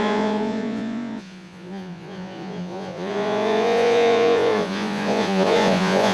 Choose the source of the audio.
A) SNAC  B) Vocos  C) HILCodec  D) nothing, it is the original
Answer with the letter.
B